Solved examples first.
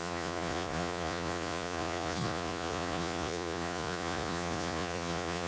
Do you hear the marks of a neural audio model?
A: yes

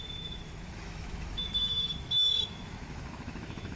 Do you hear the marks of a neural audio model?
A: yes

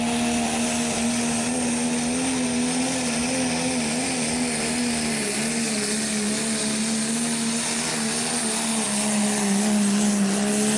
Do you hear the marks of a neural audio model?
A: no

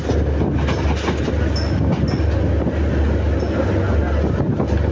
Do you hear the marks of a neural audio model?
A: no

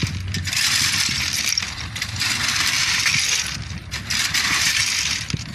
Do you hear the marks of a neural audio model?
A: yes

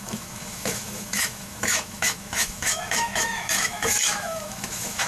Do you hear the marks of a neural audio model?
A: yes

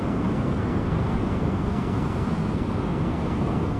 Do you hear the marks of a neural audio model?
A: yes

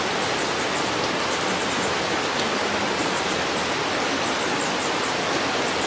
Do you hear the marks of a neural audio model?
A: no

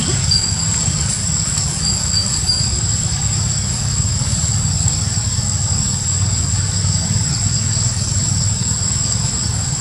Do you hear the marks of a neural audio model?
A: yes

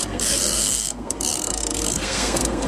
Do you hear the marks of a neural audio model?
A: yes